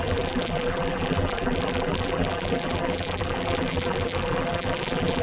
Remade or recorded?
remade